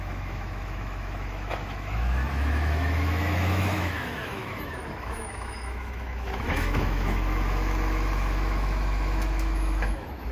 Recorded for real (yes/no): no